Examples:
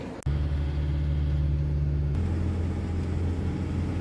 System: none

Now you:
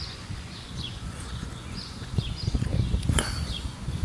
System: vocoder, Vocos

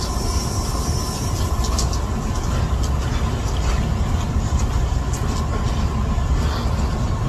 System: none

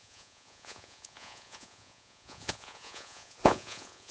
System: vocoder, Vocos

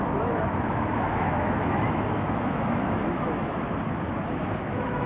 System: autoencoder, DAC-VAE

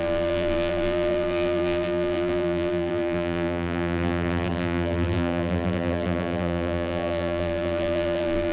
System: vocoder, BigVGAN v2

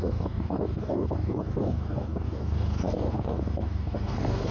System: codec, DAC